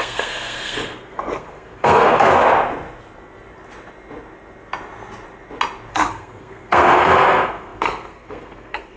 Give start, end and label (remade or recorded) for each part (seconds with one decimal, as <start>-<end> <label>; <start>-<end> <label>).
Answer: 0.0-2.3 remade; 2.3-5.9 recorded; 5.9-9.0 remade